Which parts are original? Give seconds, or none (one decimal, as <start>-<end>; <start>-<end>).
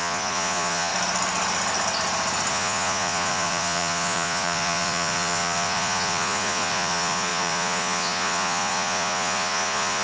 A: 0.9-2.5